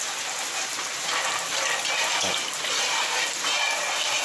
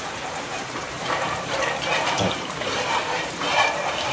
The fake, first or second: second